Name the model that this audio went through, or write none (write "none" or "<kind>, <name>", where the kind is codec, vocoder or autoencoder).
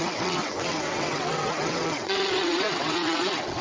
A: vocoder, WaveNeXt